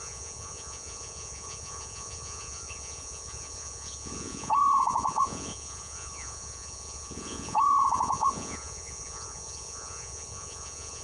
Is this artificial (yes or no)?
yes